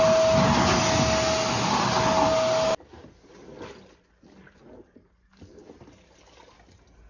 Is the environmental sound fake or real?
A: real